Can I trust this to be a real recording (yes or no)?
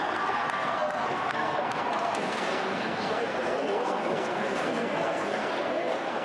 no